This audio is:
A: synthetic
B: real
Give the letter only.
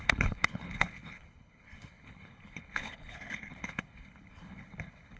A